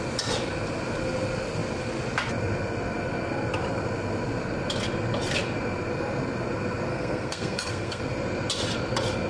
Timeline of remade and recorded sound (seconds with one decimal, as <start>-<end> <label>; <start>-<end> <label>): 0.0-6.9 recorded; 6.9-8.0 remade; 8.0-9.3 recorded

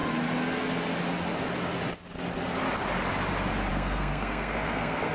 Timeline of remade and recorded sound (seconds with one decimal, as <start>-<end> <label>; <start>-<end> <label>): 0.0-3.7 recorded; 3.7-5.1 remade